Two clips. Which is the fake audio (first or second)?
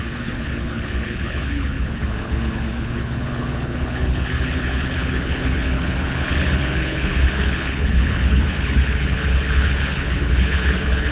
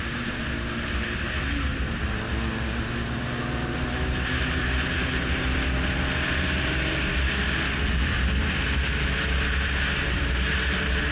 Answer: first